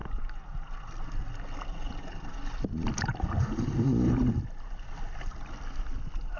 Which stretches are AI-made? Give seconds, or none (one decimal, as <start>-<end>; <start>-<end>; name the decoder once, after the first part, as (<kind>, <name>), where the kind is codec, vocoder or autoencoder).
none